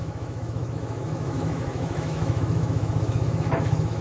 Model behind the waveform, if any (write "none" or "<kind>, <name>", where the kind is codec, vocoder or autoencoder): autoencoder, DAC-VAE